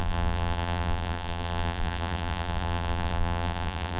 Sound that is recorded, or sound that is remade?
remade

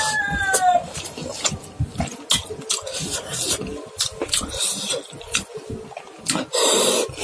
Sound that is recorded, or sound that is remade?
recorded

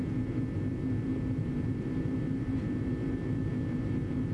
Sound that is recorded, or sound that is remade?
remade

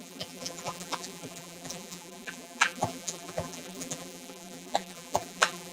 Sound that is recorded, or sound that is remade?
remade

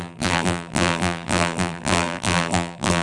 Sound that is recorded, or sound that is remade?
remade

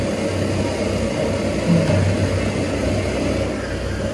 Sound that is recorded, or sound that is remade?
recorded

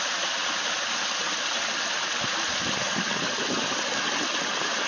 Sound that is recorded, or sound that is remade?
recorded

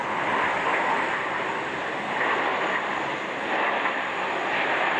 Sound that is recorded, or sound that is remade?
recorded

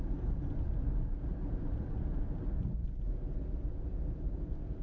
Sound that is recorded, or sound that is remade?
recorded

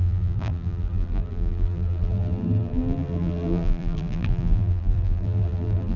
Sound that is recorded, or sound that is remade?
remade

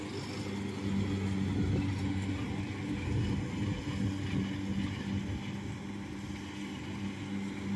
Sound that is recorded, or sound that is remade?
recorded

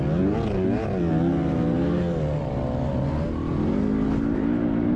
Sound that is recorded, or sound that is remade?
recorded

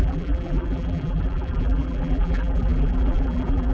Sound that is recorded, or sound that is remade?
remade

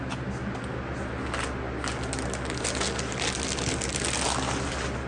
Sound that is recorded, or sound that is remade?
recorded